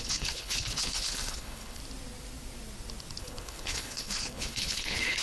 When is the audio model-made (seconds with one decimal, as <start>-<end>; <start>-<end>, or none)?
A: 0.0-1.8; 3.2-5.2